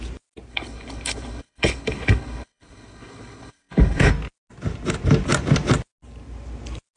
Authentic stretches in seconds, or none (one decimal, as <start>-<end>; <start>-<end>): 0.0-0.5; 4.1-7.0